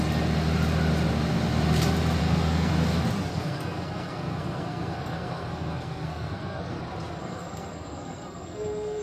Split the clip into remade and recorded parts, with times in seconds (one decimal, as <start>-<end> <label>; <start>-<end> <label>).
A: 0.0-2.2 recorded; 2.2-2.7 remade; 2.7-3.3 recorded; 3.3-6.8 remade; 6.8-7.2 recorded; 7.2-9.0 remade